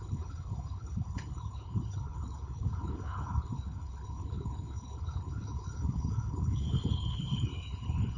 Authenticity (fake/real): fake